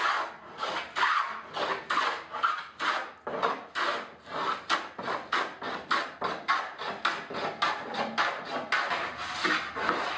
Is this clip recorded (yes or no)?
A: yes